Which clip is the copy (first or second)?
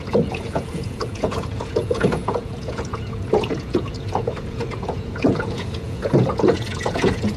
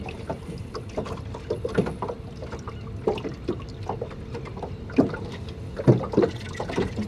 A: first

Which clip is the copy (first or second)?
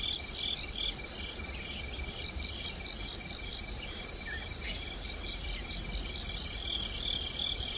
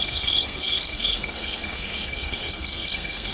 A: second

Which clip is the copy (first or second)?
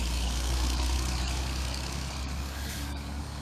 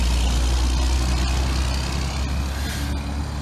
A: first